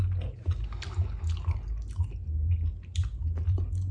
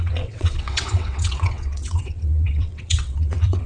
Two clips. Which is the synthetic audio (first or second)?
second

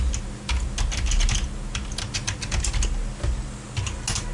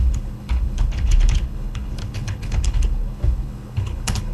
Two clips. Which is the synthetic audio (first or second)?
second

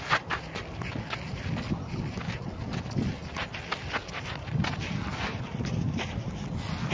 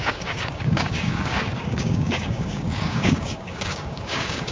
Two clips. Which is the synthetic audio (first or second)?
second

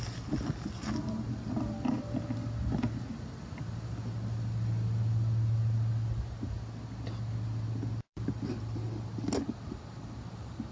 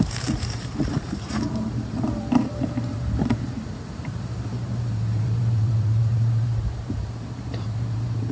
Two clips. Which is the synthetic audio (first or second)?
second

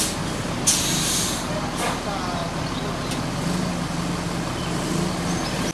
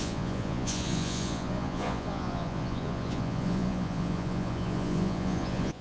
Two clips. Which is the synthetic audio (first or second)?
second